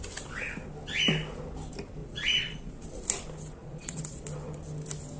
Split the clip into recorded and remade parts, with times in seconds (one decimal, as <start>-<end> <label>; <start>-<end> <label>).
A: 0.0-2.0 recorded; 2.0-2.7 remade; 2.7-3.6 recorded; 3.6-4.2 remade; 4.2-5.2 recorded